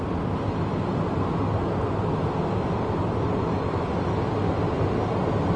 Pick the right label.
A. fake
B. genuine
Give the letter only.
B